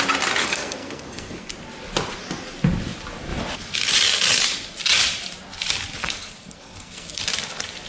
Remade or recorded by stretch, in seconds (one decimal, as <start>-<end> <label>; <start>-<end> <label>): 0.0-0.4 recorded; 0.4-1.5 remade; 1.5-6.0 recorded; 6.0-7.2 remade; 7.2-7.9 recorded